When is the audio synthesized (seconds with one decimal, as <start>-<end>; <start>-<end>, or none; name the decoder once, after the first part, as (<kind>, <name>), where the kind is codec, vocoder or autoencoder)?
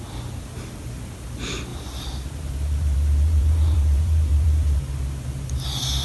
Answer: 1.7-4.8 (vocoder, BigVGAN v2)